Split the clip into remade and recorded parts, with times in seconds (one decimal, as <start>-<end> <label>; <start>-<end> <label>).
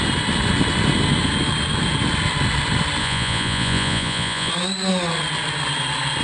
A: 0.0-3.0 recorded; 3.0-4.5 remade; 4.5-6.2 recorded